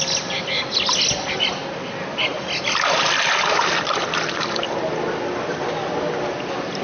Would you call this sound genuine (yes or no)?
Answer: yes